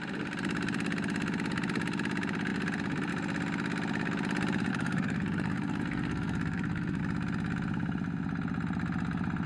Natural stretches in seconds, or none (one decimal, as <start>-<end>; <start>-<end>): 0.0-4.7; 7.0-9.5